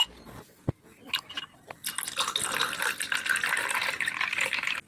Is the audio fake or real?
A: real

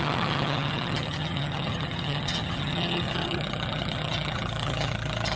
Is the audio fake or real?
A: fake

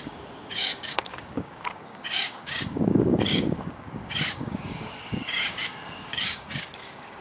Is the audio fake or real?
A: fake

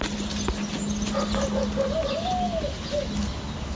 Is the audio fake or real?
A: real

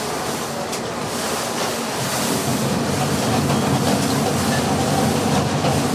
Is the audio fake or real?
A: real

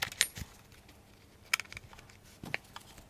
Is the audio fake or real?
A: real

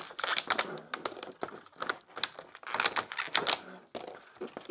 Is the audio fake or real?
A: real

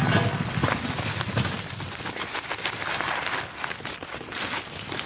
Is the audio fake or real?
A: real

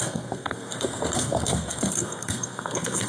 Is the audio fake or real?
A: fake